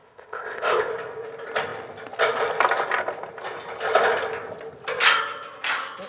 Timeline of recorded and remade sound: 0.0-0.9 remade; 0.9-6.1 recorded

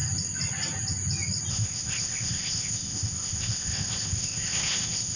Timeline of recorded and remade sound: 0.0-1.5 recorded; 1.5-5.2 remade

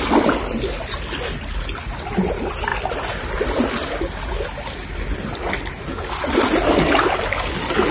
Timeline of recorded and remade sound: 0.0-7.9 recorded

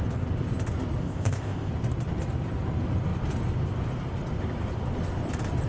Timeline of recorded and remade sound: 0.0-1.0 recorded; 1.0-1.7 remade; 1.7-5.7 recorded

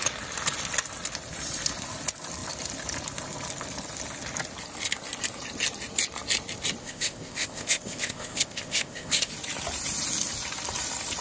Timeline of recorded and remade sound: 0.0-6.8 recorded; 6.8-9.3 remade; 9.3-11.2 recorded